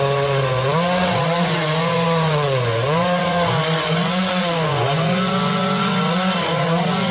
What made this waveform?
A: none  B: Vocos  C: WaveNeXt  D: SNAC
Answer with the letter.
B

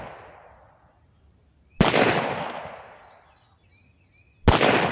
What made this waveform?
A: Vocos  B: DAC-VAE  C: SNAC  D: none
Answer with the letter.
D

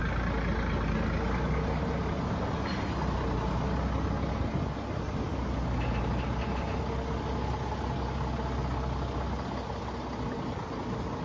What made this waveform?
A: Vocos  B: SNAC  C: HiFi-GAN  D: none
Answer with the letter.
D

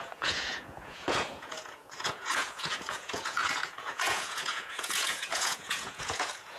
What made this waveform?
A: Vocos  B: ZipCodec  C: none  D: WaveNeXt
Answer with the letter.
A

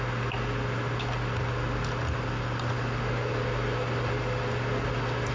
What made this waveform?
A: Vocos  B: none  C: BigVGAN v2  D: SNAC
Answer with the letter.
B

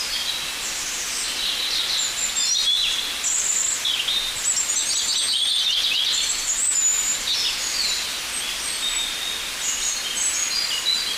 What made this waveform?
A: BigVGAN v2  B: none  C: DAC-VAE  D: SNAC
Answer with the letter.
B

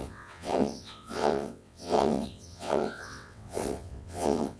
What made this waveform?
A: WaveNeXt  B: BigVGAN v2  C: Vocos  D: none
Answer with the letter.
A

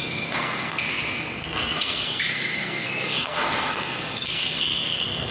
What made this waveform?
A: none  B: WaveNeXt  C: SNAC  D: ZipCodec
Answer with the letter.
C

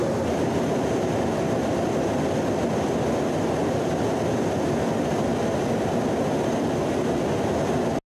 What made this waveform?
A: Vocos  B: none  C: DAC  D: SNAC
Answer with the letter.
B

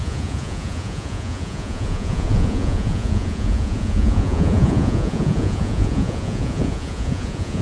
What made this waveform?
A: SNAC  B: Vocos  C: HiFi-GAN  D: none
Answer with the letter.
B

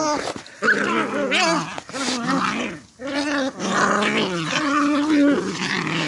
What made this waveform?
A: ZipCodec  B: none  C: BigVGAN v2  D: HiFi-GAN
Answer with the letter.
B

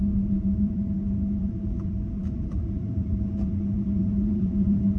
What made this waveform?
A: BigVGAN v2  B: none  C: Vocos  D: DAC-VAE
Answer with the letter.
A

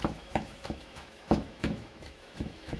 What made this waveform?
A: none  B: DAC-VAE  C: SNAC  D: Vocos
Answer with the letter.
B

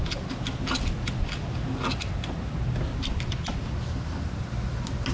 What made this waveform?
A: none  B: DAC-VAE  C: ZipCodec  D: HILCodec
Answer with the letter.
A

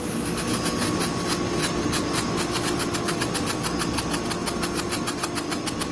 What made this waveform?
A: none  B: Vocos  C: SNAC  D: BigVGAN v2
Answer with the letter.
A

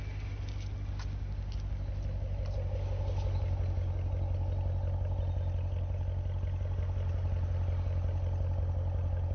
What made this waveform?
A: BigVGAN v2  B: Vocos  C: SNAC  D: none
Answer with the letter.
D